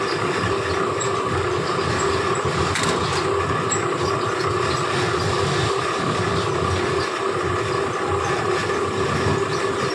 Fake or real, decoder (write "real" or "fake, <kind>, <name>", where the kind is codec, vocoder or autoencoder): real